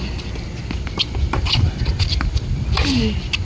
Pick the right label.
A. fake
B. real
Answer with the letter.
B